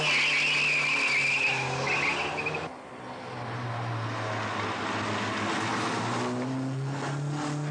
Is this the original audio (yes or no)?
yes